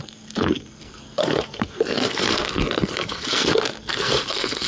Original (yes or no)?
no